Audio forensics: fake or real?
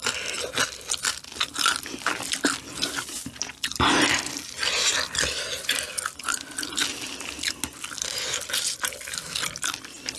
real